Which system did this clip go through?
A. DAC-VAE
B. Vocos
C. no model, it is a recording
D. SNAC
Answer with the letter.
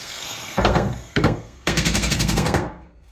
D